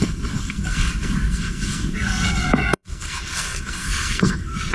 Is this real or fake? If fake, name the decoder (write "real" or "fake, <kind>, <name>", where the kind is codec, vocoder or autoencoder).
fake, codec, SNAC